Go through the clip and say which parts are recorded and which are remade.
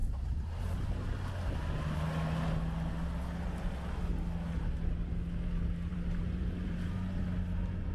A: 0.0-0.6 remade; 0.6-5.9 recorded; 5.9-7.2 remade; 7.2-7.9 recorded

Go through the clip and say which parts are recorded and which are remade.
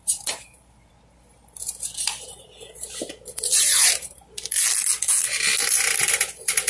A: 0.0-0.9 remade; 0.9-2.3 recorded; 2.3-4.6 remade; 4.6-6.7 recorded